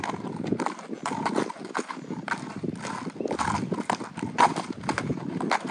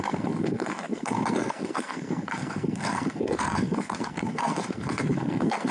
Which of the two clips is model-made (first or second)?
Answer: second